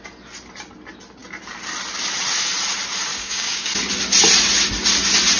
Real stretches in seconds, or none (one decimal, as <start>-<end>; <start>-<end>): 0.0-3.1; 3.7-5.4